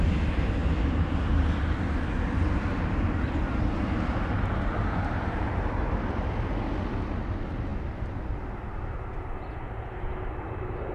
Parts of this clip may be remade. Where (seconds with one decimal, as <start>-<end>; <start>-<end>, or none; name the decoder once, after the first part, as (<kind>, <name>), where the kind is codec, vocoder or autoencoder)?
none